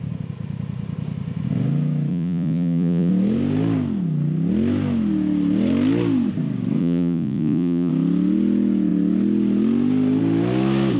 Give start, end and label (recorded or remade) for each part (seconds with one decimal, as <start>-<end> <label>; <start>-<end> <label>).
0.0-2.1 recorded; 2.1-3.1 remade; 3.1-6.8 recorded; 6.8-7.9 remade; 7.9-11.0 recorded